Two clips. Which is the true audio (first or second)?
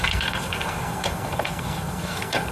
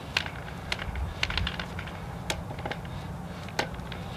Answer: second